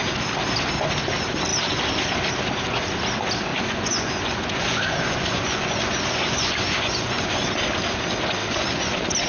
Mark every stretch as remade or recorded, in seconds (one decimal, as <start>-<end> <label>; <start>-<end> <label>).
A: 0.0-3.5 recorded; 3.5-7.5 remade; 7.5-8.4 recorded; 8.4-8.9 remade; 8.9-9.3 recorded